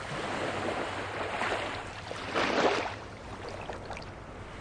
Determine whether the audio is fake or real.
real